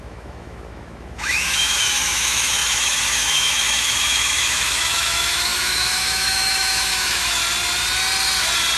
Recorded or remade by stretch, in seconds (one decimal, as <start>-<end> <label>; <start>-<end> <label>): 0.0-7.4 remade; 7.4-8.8 recorded